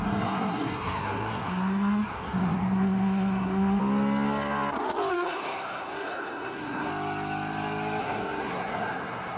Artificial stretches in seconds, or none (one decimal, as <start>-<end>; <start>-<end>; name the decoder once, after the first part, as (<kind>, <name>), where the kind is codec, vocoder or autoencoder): 0.0-3.8 (codec, SNAC); 5.1-6.9; 8.0-9.4